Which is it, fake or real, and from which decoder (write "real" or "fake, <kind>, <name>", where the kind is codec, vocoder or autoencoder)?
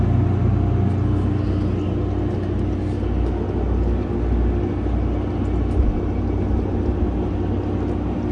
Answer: real